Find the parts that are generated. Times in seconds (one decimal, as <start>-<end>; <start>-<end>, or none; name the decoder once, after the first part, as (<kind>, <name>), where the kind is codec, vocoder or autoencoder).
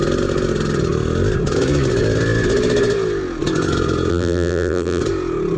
4.1-5.0 (vocoder, BigVGAN v2)